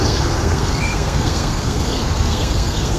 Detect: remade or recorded remade